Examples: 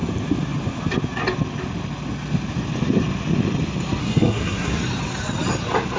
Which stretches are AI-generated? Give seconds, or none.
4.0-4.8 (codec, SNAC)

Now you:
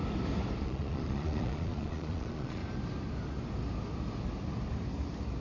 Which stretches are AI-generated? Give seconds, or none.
0.6-2.6 (vocoder, Vocos)

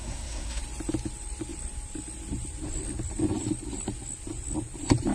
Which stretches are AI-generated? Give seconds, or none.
0.0-0.6 (codec, SNAC)